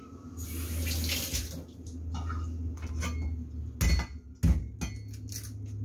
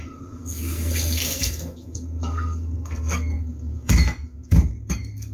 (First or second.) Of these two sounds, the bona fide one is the first